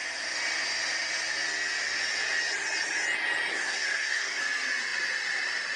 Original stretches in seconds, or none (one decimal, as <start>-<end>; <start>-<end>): 0.0-3.5; 4.4-5.8